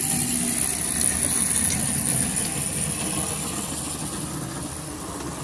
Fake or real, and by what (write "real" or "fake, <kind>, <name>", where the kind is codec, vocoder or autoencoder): real